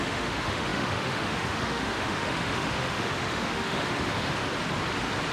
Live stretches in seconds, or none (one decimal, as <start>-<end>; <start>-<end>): 4.4-5.3

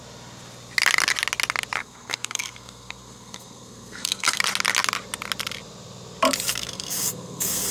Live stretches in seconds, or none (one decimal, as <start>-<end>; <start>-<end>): 0.0-1.8; 4.4-6.5

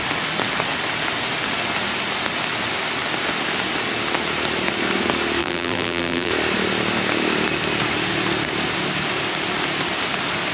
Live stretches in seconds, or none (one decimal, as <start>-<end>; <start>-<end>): 0.0-5.4; 6.3-10.5

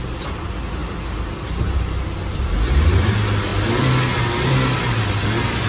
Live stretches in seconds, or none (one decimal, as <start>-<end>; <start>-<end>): 0.0-5.7

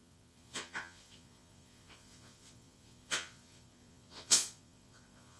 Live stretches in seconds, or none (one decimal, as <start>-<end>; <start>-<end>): none

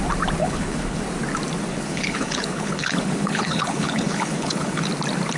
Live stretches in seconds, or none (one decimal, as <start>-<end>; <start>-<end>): 0.0-0.4; 1.0-1.7; 4.9-5.4

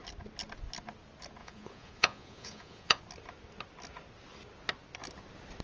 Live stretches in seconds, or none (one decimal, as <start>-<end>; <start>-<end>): 0.0-1.4; 3.0-5.6

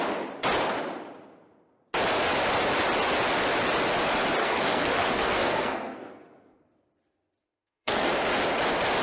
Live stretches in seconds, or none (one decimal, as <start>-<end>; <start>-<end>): 0.0-4.4; 6.6-7.4; 8.1-9.0